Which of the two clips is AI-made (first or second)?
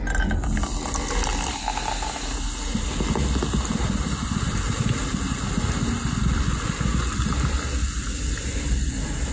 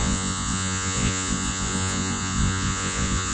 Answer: second